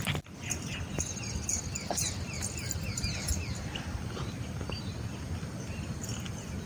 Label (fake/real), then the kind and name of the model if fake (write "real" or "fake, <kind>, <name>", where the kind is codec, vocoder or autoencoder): real